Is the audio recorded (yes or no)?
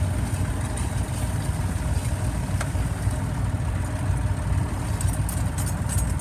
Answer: yes